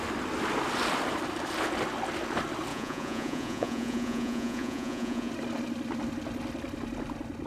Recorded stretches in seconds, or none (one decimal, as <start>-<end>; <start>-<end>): 0.0-2.7; 5.3-7.5